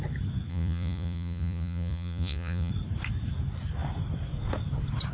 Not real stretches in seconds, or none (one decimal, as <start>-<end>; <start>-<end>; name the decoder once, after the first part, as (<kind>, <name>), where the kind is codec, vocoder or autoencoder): 0.5-2.7 (vocoder, Vocos)